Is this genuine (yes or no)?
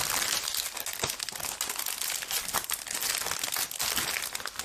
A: yes